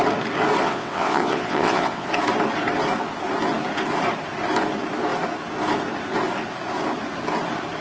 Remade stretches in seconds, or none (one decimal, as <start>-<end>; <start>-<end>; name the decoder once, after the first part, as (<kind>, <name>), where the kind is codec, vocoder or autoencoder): 0.6-2.1 (vocoder, WaveNeXt)